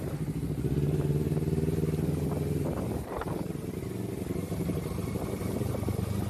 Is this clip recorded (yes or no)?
yes